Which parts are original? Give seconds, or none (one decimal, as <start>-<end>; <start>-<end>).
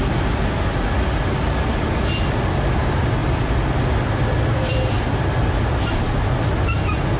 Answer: 0.0-3.2; 5.6-7.2